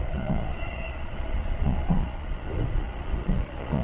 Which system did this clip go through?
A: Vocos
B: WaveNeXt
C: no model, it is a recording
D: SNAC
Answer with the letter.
A